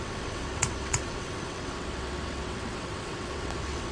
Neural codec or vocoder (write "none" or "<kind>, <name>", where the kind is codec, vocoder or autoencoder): vocoder, WaveNeXt